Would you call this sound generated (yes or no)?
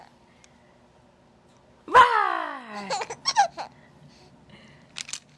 no